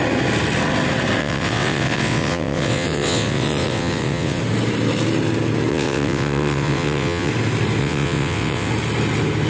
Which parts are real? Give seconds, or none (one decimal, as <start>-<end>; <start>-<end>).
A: 0.0-1.2; 4.4-5.7; 7.3-7.8; 8.7-9.5